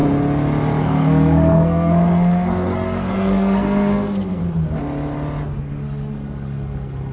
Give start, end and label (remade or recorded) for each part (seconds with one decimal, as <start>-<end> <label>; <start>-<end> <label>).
0.0-0.8 recorded; 0.8-4.4 remade; 4.4-5.6 recorded; 5.6-7.1 remade